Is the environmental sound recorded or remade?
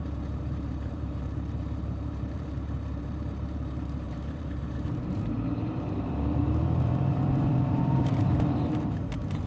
remade